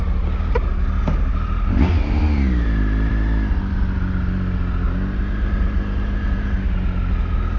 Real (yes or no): yes